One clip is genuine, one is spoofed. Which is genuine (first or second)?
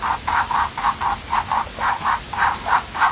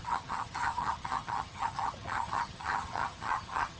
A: first